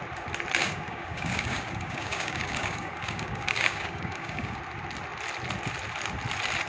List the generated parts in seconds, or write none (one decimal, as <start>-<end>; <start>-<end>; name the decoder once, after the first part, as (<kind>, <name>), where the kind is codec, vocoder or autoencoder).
0.6-4.6 (codec, DAC)